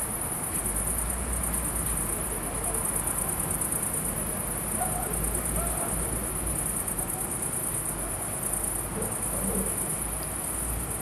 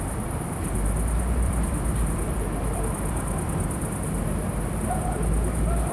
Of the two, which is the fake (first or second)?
second